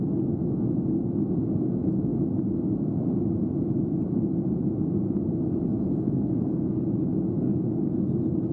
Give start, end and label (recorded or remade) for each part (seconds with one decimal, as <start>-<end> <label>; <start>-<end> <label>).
0.0-5.9 recorded; 5.9-6.8 remade; 6.8-8.5 recorded